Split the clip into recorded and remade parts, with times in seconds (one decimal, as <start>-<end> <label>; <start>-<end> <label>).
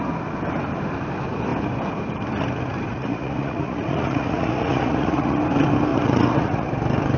0.0-2.9 recorded; 2.9-5.4 remade; 5.4-5.9 recorded; 5.9-6.7 remade; 6.7-7.2 recorded